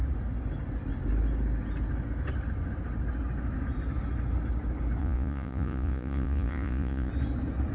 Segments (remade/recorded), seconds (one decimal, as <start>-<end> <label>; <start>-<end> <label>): 0.0-5.0 recorded; 5.0-7.1 remade; 7.1-7.7 recorded